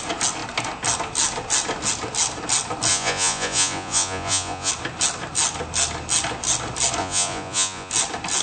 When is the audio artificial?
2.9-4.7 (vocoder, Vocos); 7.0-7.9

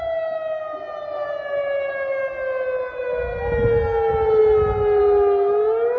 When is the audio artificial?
none

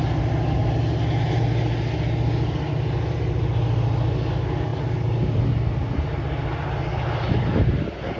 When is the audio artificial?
none

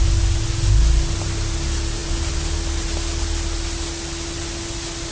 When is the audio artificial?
none

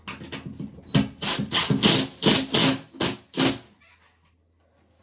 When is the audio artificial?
none

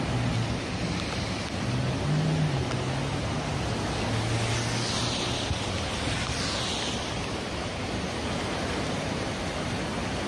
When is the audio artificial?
none

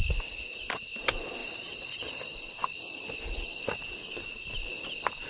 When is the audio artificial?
none